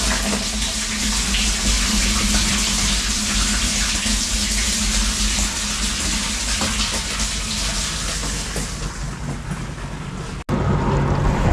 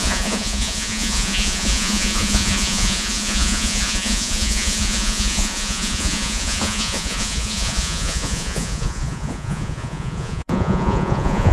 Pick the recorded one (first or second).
first